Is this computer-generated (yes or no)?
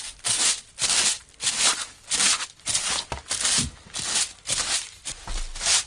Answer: no